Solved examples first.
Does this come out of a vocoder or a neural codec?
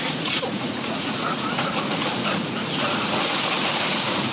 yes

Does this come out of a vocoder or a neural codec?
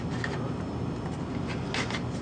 no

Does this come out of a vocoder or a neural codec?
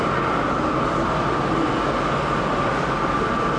no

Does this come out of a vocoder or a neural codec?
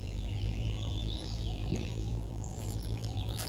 yes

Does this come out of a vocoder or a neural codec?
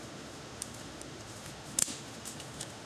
yes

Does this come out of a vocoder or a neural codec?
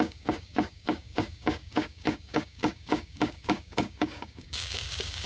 yes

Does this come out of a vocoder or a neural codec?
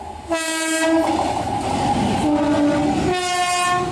no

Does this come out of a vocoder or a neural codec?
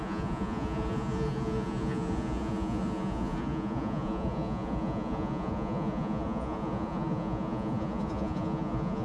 yes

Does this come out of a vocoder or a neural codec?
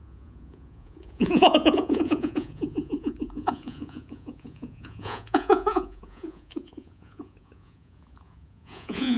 yes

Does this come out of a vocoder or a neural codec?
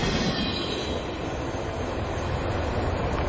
no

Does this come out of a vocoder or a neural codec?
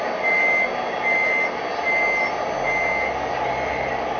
no